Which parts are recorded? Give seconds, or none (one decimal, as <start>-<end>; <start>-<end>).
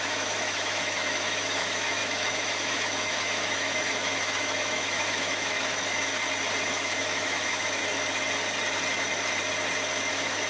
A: 6.1-6.7; 7.8-10.1